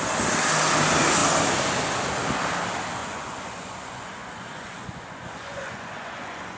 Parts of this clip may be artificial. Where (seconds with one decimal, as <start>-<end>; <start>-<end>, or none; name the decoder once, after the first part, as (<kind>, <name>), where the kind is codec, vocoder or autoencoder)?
3.0-6.6 (vocoder, Vocos)